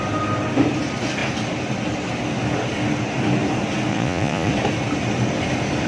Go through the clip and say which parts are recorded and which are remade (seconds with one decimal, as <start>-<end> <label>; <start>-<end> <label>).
0.0-3.9 recorded; 3.9-4.5 remade; 4.5-5.9 recorded